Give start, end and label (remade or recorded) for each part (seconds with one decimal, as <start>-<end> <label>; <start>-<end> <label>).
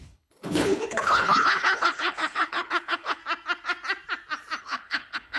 0.0-3.2 remade; 3.2-4.6 recorded; 4.6-5.4 remade